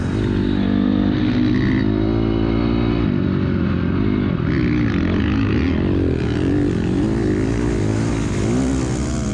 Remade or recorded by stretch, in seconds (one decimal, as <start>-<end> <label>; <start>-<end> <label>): 0.0-9.3 recorded